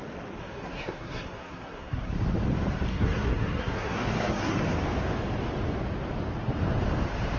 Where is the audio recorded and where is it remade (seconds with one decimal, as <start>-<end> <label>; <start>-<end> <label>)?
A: 0.0-0.4 recorded; 0.4-2.1 remade; 2.1-2.9 recorded; 2.9-4.6 remade; 4.6-7.4 recorded